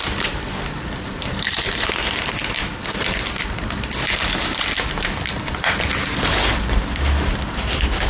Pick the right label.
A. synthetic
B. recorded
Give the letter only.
A